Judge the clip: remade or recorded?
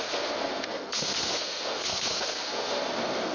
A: remade